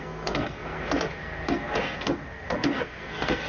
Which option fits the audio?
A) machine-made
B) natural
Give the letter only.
A